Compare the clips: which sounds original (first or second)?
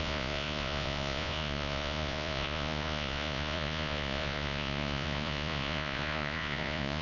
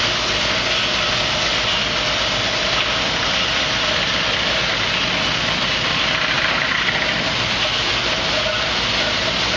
second